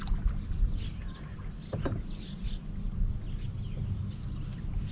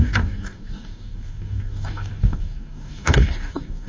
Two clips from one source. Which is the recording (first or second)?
first